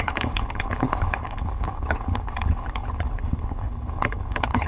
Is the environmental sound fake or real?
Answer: fake